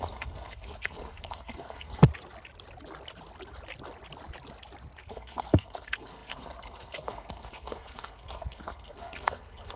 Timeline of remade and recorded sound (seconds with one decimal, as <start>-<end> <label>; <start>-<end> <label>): 0.0-2.1 remade; 2.1-5.1 recorded; 5.1-9.8 remade

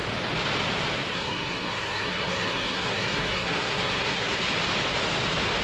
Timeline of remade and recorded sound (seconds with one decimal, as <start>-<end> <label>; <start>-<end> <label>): 0.0-1.1 recorded; 1.1-4.4 remade; 4.4-5.6 recorded